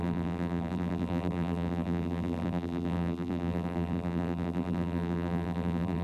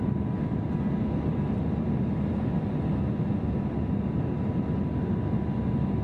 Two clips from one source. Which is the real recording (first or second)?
second